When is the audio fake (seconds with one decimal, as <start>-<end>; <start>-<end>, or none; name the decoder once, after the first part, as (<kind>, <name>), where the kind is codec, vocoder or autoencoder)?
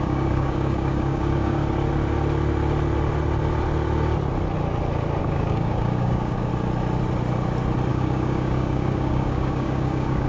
0.0-1.6 (codec, DAC); 5.2-6.5; 7.9-10.3